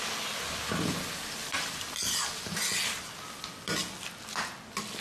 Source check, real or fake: real